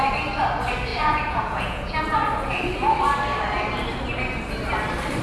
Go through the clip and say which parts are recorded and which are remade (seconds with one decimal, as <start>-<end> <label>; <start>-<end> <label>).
0.0-0.9 recorded; 0.9-2.0 remade; 2.0-5.2 recorded